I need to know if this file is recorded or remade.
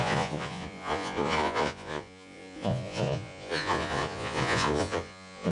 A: remade